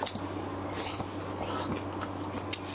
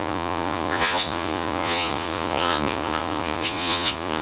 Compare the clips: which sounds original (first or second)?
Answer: first